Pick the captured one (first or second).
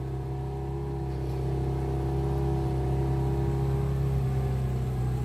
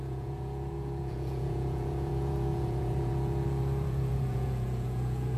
first